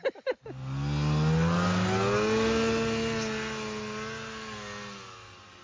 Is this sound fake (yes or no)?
no